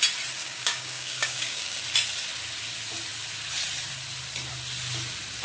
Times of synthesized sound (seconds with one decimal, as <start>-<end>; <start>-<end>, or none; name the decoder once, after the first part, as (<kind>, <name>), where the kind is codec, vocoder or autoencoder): 0.4-1.8 (codec, DAC)